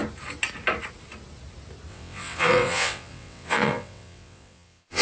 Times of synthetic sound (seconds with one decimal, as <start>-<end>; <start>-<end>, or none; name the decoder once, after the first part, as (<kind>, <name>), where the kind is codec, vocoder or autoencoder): 1.9-5.0 (vocoder, WaveNeXt)